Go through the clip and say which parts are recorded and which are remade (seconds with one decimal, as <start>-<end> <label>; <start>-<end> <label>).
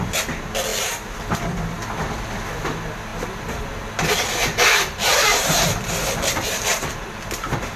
0.0-4.4 recorded; 4.4-7.0 remade; 7.0-7.8 recorded